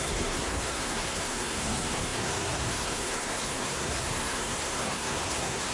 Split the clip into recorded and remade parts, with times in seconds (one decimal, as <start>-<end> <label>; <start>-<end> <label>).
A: 0.0-5.7 remade